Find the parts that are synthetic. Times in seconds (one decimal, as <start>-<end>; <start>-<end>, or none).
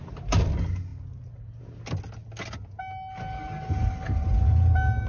none